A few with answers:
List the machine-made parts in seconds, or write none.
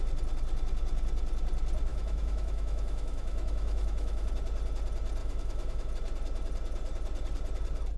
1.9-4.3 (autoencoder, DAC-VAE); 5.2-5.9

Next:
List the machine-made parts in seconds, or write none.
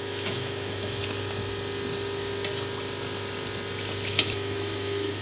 0.0-1.0 (autoencoder, DAC-VAE); 4.1-5.2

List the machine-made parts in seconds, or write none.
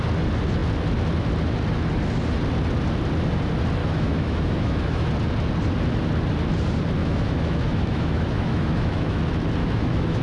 3.8-5.1 (autoencoder, DAC-VAE); 7.0-9.2; 9.6-10.2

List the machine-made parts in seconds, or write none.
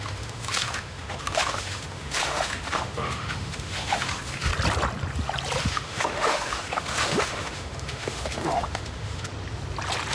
0.0-4.5 (autoencoder, DAC-VAE); 5.6-9.3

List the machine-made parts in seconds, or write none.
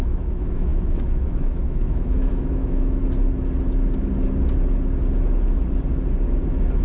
0.0-3.0 (autoencoder, DAC-VAE)